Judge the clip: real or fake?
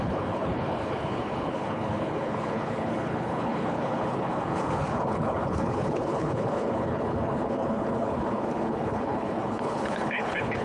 fake